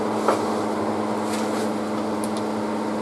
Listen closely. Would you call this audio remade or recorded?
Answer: recorded